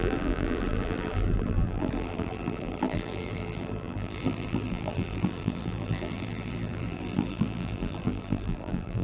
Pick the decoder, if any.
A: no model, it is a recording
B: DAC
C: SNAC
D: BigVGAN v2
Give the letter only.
D